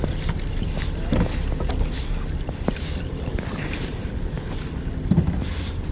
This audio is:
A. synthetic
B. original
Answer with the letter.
B